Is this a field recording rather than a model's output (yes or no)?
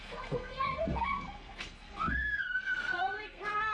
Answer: no